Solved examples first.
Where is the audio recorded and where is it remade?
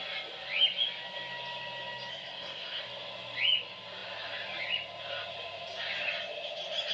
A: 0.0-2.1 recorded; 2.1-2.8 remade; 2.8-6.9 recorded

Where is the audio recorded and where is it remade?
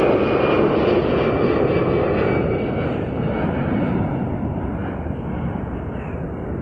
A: 0.0-6.6 recorded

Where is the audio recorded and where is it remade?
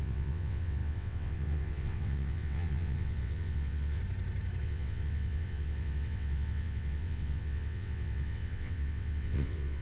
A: 0.0-4.0 remade; 4.0-4.6 recorded; 4.6-9.8 remade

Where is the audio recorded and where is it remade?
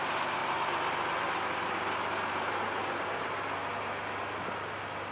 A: 0.0-5.1 recorded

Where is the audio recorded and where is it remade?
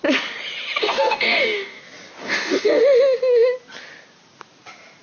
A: 0.0-0.8 recorded; 0.8-1.8 remade; 1.8-2.2 recorded; 2.2-2.8 remade; 2.8-5.0 recorded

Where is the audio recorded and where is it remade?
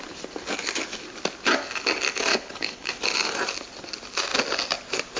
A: 0.0-2.3 recorded; 2.3-2.9 remade; 2.9-5.2 recorded